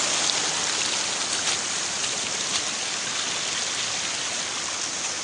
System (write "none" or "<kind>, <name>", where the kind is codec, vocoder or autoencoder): none